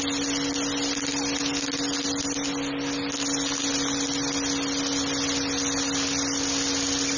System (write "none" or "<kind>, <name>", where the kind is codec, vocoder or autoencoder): none